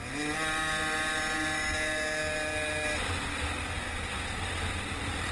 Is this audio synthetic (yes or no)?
no